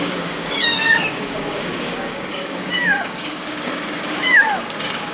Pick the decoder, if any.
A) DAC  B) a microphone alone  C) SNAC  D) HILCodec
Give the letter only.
A